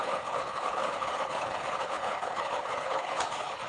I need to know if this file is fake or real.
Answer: fake